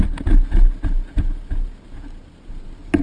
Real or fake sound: real